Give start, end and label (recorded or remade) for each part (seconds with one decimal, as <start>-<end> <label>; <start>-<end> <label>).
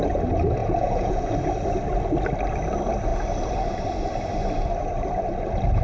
0.0-0.6 recorded; 0.6-1.3 remade; 1.3-5.8 recorded